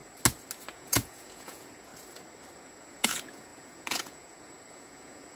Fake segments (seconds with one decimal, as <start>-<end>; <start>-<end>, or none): 0.7-1.9; 2.6-5.4